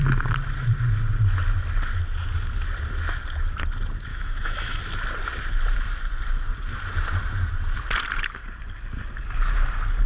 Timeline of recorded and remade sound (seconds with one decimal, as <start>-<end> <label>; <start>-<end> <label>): 0.0-4.1 recorded; 4.1-4.8 remade; 4.8-10.1 recorded